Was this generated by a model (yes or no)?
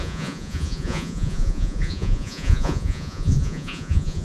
yes